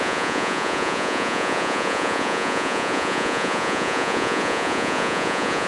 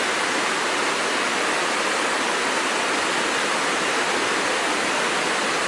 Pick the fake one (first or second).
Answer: first